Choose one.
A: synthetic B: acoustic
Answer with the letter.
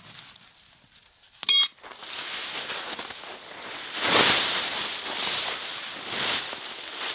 B